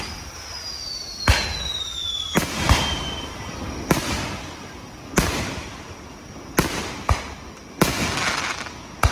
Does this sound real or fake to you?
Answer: real